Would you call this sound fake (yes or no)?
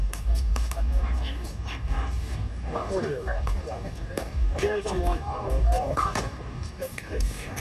yes